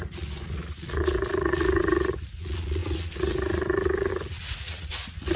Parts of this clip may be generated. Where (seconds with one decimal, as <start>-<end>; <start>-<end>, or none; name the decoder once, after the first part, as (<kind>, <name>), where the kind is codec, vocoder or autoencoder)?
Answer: 0.0-5.4 (vocoder, Vocos)